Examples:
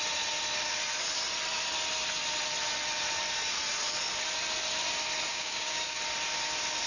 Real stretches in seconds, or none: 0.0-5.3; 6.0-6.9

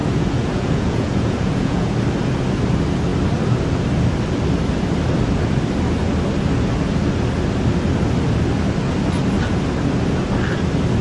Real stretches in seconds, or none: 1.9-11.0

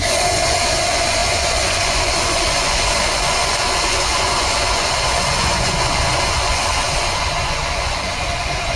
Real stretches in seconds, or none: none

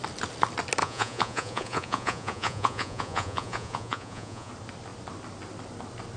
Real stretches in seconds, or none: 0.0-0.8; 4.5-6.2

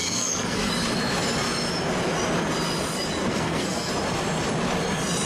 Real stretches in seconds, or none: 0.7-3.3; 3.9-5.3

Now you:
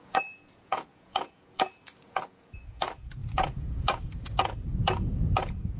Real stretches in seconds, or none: none

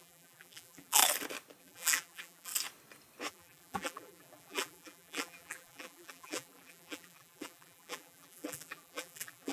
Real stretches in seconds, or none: 1.0-1.6; 2.5-3.3

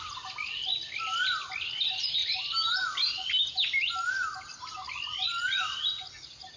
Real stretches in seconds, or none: 0.0-6.6